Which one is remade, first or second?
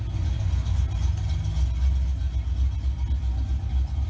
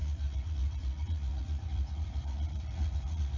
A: second